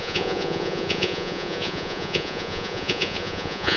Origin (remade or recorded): remade